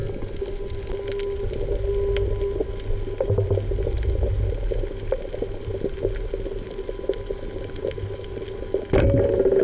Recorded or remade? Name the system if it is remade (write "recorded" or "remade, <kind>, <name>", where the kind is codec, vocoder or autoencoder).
recorded